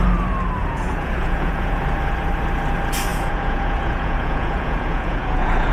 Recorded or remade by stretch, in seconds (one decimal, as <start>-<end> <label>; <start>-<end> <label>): 0.0-0.6 recorded; 0.6-1.8 remade; 1.8-3.1 recorded; 3.1-5.7 remade